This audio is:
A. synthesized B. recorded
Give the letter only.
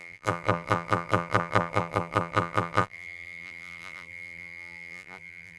A